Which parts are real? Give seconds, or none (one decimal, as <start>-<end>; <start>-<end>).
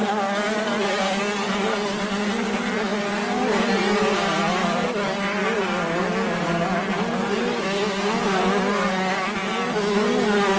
0.0-10.6